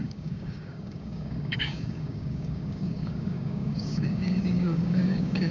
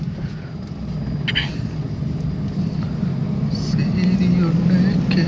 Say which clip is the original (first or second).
second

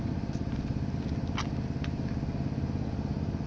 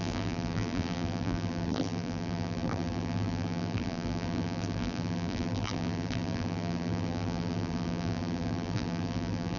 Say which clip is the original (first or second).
first